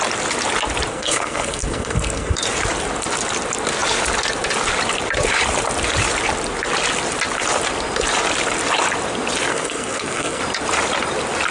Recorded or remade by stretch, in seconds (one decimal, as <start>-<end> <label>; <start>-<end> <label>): 0.0-0.9 recorded; 0.9-2.4 remade; 2.4-9.5 recorded; 9.5-10.4 remade; 10.4-11.5 recorded